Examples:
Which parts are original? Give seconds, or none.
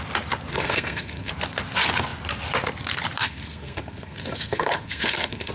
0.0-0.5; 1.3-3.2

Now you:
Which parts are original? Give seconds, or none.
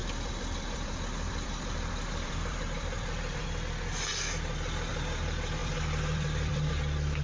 3.4-5.6; 6.7-7.2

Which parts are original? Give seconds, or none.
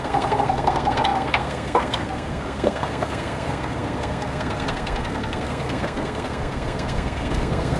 none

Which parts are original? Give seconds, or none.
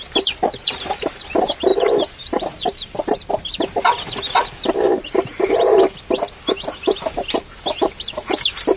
0.0-0.6; 1.1-1.7; 3.3-8.8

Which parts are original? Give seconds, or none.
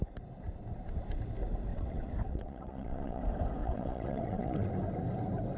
0.0-1.7; 3.2-3.6; 4.7-5.6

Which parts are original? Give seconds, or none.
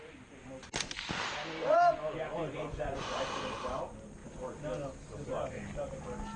0.0-2.4; 3.2-6.4